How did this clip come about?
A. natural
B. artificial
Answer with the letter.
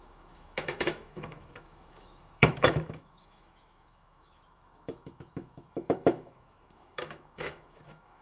B